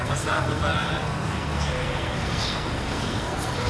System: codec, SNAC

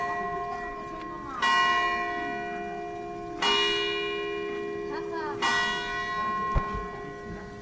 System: none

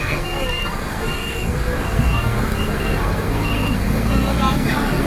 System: codec, SNAC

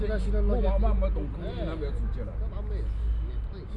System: none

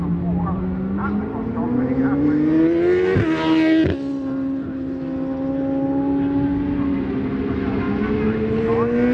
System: none